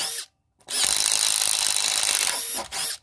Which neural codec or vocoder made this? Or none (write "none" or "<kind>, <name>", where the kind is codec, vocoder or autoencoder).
none